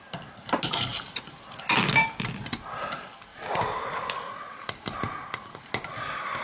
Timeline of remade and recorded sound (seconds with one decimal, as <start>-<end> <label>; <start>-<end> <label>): 0.0-6.4 recorded